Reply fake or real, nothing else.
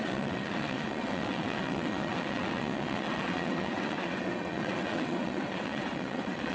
fake